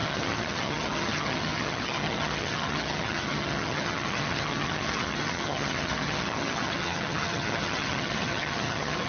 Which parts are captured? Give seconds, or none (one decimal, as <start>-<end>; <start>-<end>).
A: none